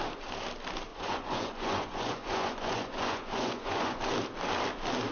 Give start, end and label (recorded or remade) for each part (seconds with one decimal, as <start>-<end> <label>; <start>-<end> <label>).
0.0-0.9 recorded; 0.9-4.0 remade; 4.0-5.1 recorded